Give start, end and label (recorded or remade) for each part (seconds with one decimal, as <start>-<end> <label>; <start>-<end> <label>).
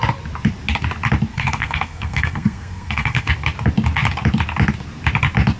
0.0-1.3 recorded; 1.3-3.3 remade; 3.3-5.6 recorded